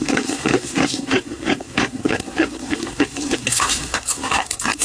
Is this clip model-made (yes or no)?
yes